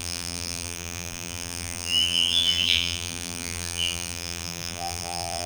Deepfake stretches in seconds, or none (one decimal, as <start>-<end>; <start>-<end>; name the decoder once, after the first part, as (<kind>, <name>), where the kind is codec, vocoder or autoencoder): 0.0-5.5 (vocoder, BigVGAN v2)